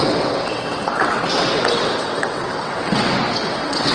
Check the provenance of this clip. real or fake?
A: fake